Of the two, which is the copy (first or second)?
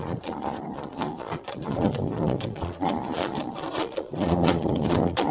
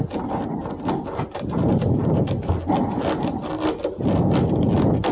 first